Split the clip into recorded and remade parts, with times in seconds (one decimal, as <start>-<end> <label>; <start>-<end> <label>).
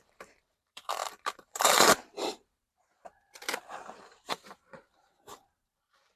0.0-6.2 remade